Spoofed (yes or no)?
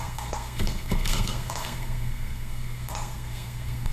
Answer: yes